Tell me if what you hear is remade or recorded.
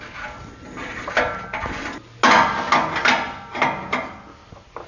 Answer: recorded